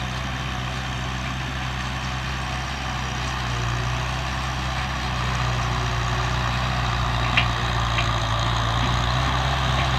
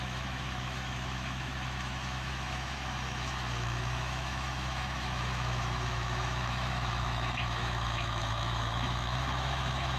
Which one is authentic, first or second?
first